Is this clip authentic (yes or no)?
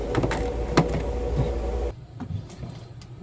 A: yes